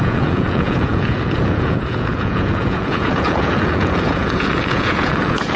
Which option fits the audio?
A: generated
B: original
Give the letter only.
A